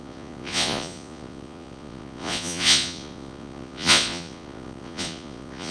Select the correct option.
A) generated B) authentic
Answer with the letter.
A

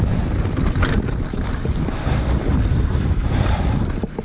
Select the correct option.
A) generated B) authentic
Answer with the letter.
B